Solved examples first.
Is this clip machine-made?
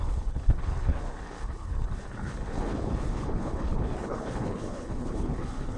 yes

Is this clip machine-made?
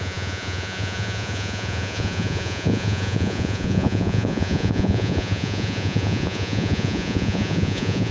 yes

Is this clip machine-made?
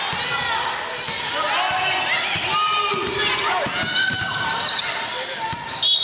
no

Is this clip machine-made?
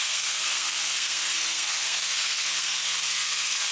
yes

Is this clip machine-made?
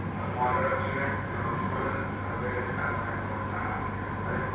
no